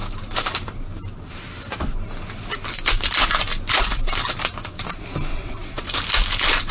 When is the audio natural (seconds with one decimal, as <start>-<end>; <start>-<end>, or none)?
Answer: 0.0-5.3; 5.9-6.7